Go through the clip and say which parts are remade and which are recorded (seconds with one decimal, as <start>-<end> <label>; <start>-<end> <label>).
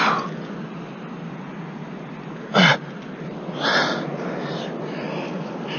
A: 0.0-5.8 recorded